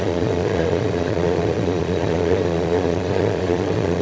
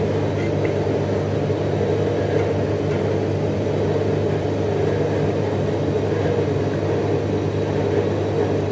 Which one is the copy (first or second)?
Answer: first